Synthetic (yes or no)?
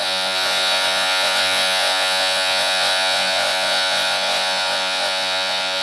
yes